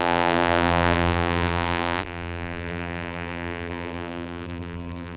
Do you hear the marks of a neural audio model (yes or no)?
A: yes